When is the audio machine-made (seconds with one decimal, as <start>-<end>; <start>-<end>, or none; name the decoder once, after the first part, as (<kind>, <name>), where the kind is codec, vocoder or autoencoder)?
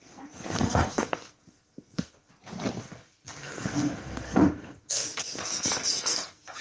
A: 0.0-2.3 (codec, SNAC); 2.8-6.6